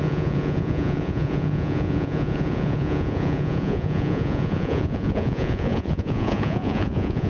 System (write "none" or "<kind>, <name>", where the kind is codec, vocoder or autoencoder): vocoder, Vocos